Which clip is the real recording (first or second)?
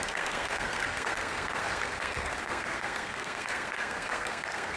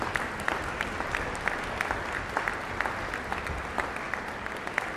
second